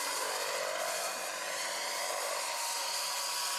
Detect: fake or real real